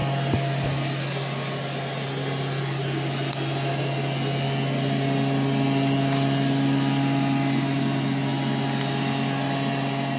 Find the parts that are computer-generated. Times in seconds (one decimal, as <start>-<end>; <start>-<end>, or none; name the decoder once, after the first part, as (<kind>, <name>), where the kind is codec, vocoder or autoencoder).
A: none